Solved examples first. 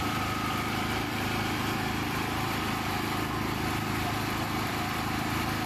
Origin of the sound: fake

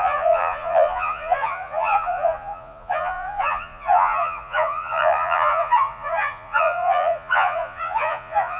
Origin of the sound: fake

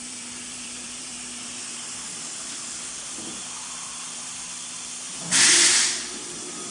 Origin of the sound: fake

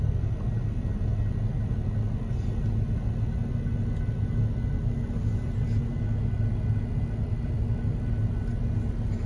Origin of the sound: real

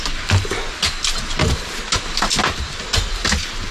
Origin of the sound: real